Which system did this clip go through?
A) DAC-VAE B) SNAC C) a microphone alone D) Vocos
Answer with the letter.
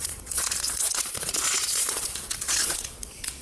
D